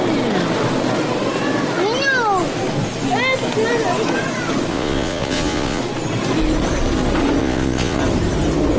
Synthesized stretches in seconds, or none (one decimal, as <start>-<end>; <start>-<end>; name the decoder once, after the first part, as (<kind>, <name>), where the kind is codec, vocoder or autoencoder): 4.7-5.8 (vocoder, Vocos); 7.4-8.0